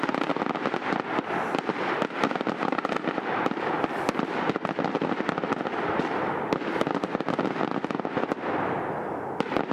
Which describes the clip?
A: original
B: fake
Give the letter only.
A